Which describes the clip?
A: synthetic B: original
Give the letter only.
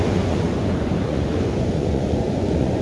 A